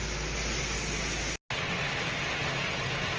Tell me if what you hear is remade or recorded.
recorded